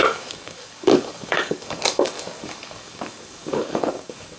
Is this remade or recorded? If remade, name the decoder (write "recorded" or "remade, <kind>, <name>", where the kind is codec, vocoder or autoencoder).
remade, codec, DAC